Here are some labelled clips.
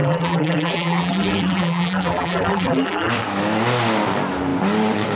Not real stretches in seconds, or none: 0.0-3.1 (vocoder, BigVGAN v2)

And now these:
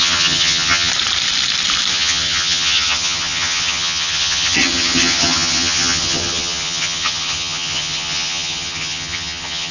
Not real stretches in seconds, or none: 0.0-0.9 (vocoder, HiFi-GAN); 1.9-9.7

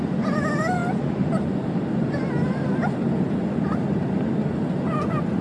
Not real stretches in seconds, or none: none

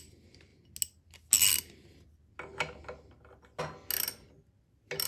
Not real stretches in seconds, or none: none

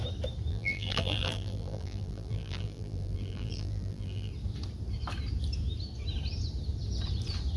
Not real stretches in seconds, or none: 0.5-4.3 (vocoder, BigVGAN v2)

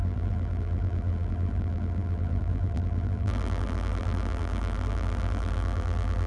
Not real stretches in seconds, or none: 0.0-6.3 (vocoder, BigVGAN v2)

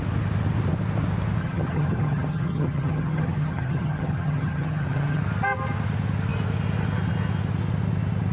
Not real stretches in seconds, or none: 1.4-5.2 (vocoder, HiFi-GAN)